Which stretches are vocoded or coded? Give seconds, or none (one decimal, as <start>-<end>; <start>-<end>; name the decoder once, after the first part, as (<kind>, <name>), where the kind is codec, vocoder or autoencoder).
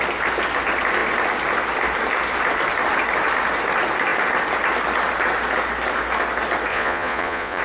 6.7-7.6 (vocoder, Vocos)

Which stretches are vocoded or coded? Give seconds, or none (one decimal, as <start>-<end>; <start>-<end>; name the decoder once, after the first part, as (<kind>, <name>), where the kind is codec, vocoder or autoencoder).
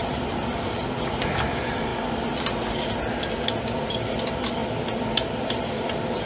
0.0-1.9 (vocoder, BigVGAN v2); 3.9-4.6; 5.8-6.2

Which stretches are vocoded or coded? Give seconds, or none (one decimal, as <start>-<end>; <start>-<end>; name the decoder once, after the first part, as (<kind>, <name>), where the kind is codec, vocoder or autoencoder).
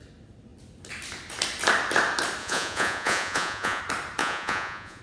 2.4-3.8 (vocoder, Vocos); 4.2-5.0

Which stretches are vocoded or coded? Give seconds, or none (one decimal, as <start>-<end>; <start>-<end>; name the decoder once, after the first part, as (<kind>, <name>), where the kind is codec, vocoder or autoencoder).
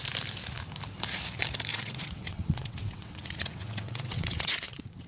1.7-5.1 (vocoder, WaveNeXt)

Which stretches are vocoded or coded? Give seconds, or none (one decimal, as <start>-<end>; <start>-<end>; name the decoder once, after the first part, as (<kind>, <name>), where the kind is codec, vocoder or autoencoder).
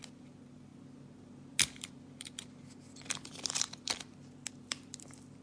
none